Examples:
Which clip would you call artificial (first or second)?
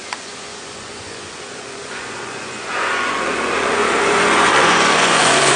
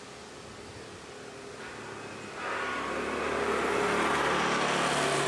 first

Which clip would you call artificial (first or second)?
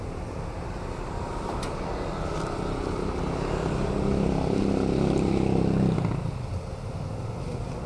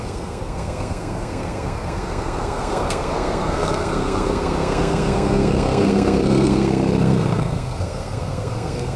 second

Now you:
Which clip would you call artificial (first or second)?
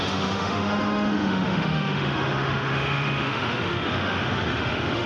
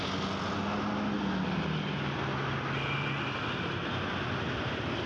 first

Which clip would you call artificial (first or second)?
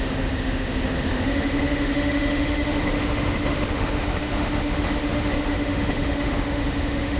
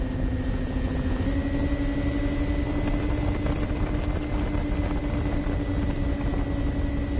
first